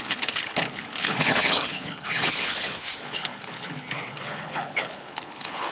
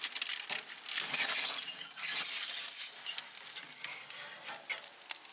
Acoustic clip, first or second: second